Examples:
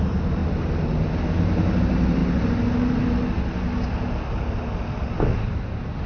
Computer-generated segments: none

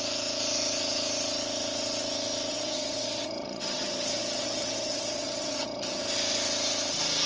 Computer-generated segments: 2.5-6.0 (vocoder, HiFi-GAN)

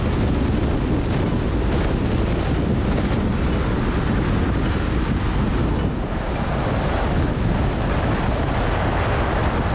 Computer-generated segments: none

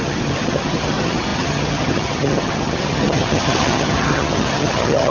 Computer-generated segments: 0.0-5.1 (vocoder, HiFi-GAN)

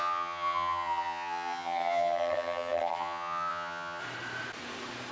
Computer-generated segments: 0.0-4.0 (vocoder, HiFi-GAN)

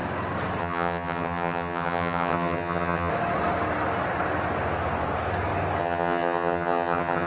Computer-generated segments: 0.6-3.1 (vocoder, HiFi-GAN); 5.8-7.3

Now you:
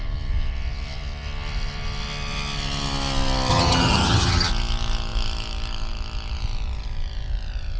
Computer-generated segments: 3.5-4.5 (vocoder, HiFi-GAN)